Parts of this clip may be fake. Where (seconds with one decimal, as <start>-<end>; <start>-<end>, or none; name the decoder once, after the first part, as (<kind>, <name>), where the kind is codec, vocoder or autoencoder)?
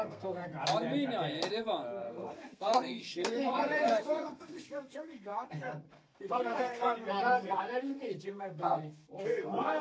0.0-0.5 (codec, SNAC); 2.0-9.8